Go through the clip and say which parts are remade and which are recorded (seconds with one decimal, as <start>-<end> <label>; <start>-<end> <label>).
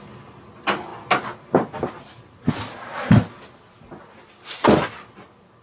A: 0.0-5.6 recorded